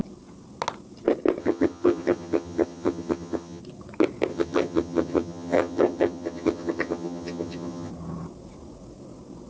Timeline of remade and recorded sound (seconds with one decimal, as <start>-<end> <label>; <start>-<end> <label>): 0.0-1.4 recorded; 1.4-3.6 remade; 3.6-4.3 recorded; 4.3-7.9 remade; 7.9-9.5 recorded